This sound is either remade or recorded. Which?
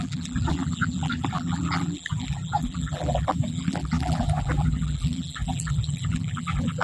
remade